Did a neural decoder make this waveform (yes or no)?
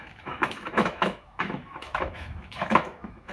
yes